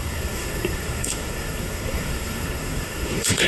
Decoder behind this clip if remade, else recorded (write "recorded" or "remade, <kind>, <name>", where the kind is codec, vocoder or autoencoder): remade, codec, SNAC